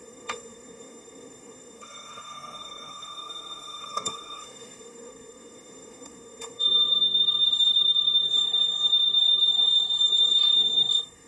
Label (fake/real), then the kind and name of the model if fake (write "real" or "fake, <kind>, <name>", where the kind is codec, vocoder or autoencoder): fake, codec, SNAC